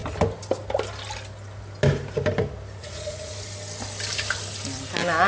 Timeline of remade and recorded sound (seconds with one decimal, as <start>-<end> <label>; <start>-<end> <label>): 0.0-2.8 recorded; 2.8-3.3 remade; 3.3-5.3 recorded